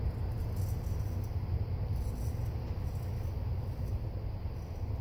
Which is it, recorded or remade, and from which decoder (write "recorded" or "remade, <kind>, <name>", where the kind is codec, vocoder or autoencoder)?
recorded